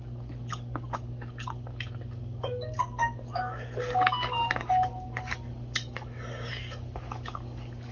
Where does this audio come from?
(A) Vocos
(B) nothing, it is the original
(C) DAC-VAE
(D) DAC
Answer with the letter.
D